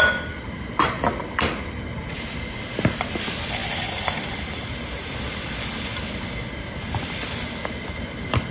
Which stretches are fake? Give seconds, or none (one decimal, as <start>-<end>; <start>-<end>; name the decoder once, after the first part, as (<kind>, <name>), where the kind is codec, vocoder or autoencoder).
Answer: 3.6-7.3 (vocoder, BigVGAN v2)